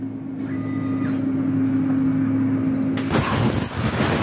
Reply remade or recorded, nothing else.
recorded